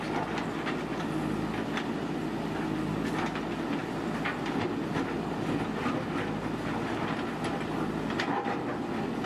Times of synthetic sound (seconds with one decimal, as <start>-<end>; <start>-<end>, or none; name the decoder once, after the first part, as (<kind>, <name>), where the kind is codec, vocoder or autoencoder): 3.8-4.6 (vocoder, BigVGAN v2)